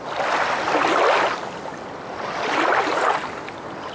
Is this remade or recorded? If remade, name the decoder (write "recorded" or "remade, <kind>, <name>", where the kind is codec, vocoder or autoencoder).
recorded